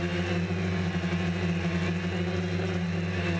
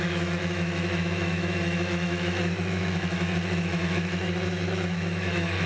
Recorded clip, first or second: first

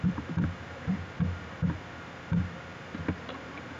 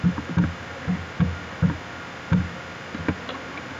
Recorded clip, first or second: second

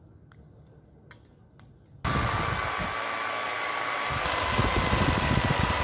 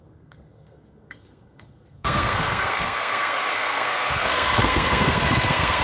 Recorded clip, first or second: first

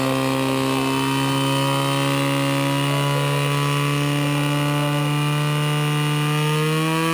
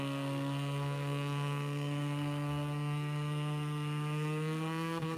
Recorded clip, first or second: first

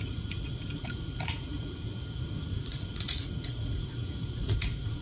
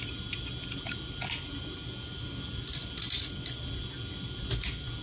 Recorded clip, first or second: second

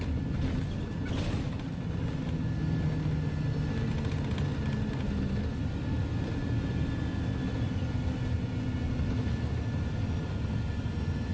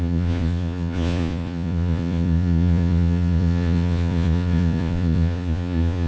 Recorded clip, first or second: first